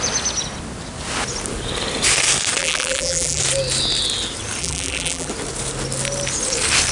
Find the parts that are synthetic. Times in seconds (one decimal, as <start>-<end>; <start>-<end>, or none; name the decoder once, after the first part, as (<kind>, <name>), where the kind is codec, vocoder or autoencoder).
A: 2.6-3.4 (vocoder, BigVGAN v2); 4.6-5.3